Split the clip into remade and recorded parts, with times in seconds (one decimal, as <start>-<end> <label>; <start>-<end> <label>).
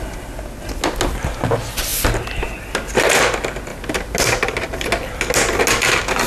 0.0-6.3 recorded